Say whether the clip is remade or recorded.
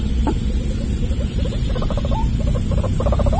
recorded